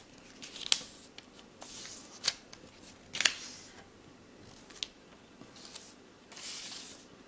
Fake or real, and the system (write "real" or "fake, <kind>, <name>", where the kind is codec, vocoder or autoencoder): real